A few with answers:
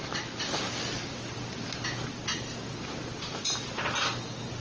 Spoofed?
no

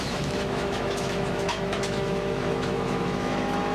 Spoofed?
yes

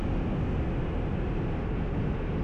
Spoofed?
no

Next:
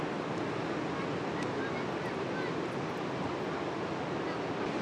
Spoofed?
no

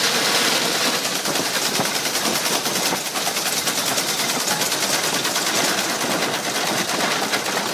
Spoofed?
no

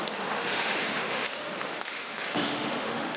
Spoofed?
yes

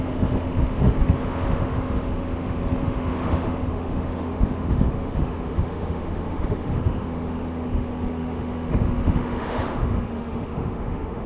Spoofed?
yes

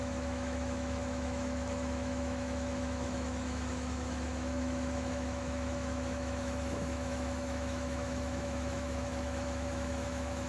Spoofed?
yes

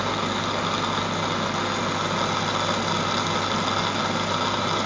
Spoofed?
no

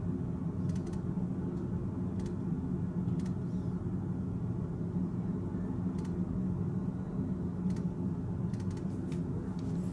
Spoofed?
no